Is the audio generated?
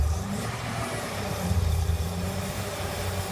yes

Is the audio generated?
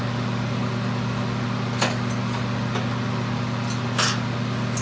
no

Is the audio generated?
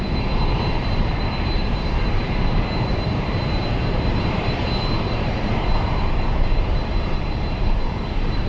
yes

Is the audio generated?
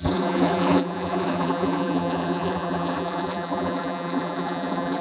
yes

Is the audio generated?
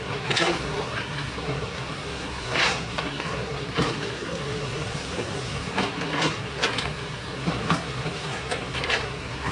yes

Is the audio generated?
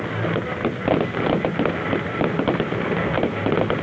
no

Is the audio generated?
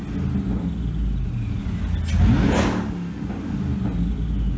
no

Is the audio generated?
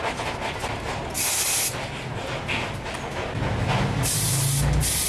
no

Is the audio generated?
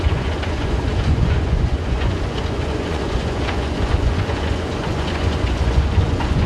yes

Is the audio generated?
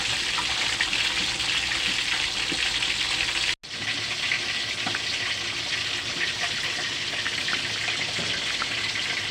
no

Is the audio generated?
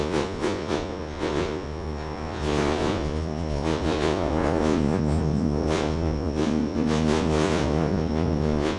yes